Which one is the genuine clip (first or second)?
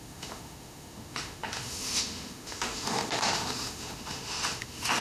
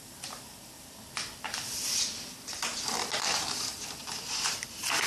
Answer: second